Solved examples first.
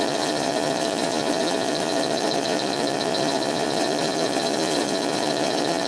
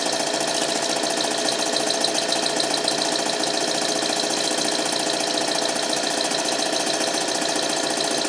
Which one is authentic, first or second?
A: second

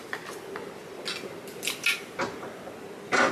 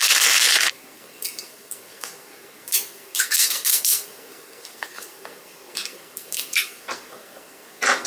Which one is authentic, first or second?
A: first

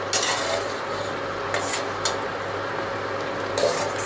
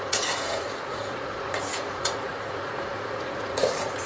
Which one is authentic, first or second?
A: first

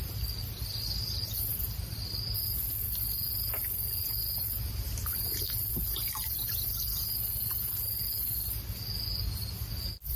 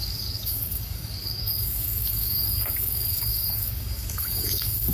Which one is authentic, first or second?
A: first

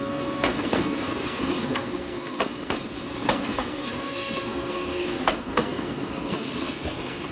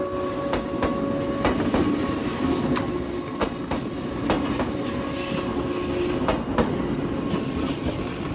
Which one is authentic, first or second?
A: second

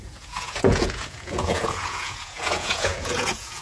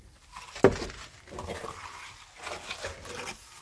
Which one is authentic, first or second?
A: second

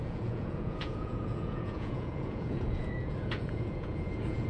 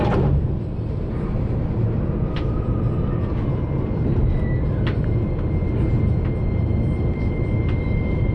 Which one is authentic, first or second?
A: second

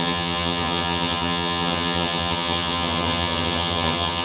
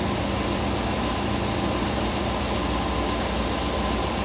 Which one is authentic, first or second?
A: second